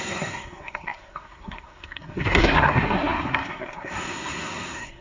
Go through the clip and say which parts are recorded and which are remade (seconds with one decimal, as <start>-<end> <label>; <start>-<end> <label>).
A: 0.0-5.0 remade